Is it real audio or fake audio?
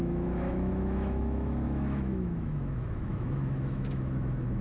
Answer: fake